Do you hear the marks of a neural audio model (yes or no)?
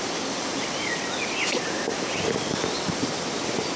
no